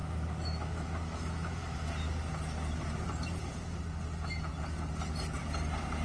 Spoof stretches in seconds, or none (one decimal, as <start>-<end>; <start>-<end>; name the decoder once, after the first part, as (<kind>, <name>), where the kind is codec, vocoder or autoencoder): 0.0-1.9 (autoencoder, DAC-VAE)

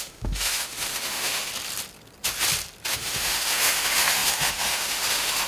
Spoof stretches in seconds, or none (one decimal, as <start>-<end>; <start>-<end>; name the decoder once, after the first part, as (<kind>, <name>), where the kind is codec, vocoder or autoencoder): 0.0-1.5 (autoencoder, DAC-VAE); 2.9-5.5

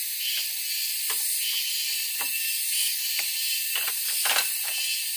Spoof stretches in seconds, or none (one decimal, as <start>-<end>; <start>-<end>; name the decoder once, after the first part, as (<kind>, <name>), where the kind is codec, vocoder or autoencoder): none

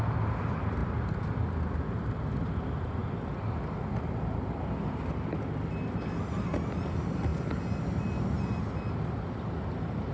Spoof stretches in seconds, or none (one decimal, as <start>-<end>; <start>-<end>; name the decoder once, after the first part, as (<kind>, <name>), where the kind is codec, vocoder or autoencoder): none

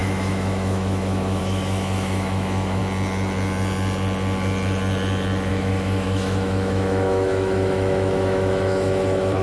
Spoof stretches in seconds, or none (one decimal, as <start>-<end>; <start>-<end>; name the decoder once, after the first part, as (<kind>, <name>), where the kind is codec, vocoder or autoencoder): 0.0-2.8 (autoencoder, DAC-VAE); 5.5-9.4

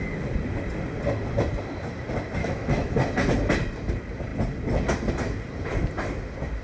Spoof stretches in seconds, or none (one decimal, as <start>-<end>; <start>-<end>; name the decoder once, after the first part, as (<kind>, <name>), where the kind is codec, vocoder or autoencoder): 2.4-2.9 (autoencoder, DAC-VAE)

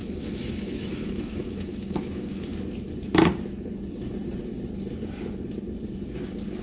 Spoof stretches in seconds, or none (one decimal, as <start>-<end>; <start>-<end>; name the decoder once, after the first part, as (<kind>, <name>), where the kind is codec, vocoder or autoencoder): 0.0-2.5 (autoencoder, DAC-VAE)